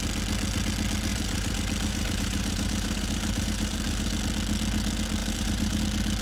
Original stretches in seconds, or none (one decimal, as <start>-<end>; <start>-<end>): 0.0-1.1; 4.2-5.2; 5.8-6.2